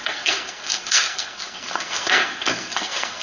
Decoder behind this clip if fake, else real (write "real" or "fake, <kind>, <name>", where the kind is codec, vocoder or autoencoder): fake, codec, SNAC